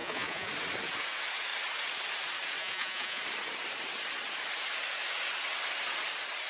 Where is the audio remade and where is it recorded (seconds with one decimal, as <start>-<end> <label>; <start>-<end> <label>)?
0.0-0.5 remade; 0.5-2.6 recorded; 2.6-3.2 remade; 3.2-6.5 recorded